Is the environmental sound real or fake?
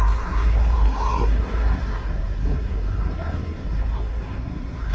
fake